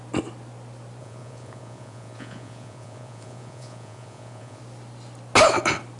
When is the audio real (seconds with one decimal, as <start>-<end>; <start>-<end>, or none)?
0.0-1.0; 4.6-6.0